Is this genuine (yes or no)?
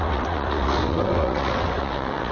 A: no